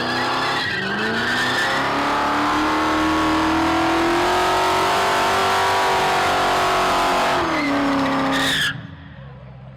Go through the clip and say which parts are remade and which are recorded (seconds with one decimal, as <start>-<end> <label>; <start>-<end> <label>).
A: 0.0-9.8 recorded